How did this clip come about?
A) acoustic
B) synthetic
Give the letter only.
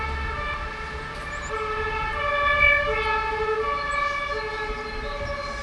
A